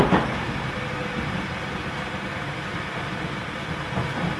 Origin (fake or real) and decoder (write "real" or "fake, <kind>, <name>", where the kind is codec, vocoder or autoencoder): real